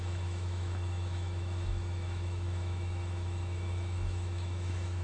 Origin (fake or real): fake